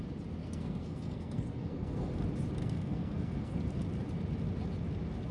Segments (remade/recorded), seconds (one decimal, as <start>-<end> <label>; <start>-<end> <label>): 0.0-0.4 recorded; 0.4-2.1 remade; 2.1-2.6 recorded; 2.6-3.6 remade; 3.6-5.3 recorded